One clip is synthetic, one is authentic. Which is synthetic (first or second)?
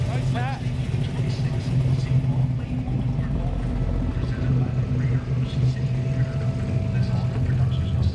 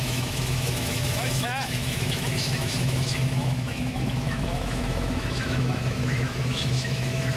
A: second